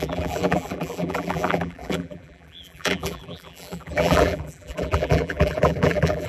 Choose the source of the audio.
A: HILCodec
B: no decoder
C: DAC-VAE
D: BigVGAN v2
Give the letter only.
D